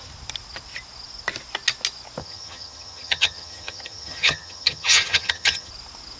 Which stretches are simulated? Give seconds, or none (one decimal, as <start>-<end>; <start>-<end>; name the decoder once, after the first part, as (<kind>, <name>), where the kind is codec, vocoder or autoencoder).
2.2-5.7 (vocoder, HiFi-GAN)